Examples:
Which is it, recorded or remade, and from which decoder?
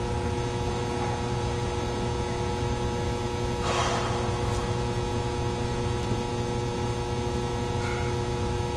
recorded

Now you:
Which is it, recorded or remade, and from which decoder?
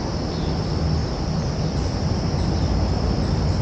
recorded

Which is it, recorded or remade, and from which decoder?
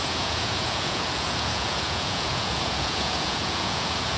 remade, vocoder, Vocos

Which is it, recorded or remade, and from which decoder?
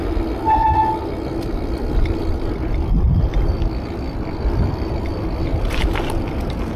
recorded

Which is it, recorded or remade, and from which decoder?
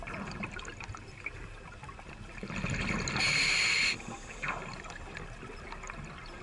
recorded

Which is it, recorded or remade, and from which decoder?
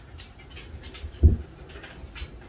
recorded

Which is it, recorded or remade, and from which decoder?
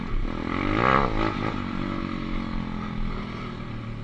recorded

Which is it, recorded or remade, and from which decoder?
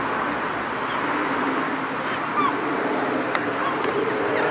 recorded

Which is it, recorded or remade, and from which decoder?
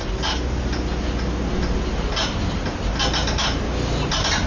recorded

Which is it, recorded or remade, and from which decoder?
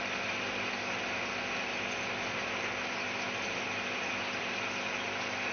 recorded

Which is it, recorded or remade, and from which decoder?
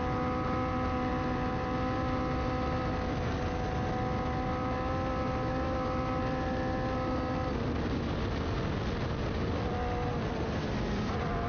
recorded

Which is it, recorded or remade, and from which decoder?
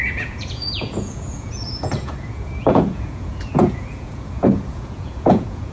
remade, vocoder, Vocos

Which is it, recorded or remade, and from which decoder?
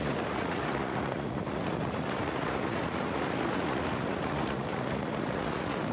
remade, vocoder, Vocos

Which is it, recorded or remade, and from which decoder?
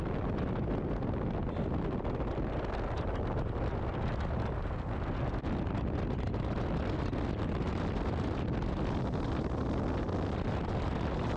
recorded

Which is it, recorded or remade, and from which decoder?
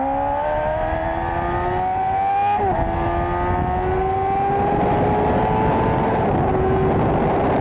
recorded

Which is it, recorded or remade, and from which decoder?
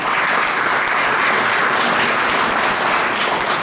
recorded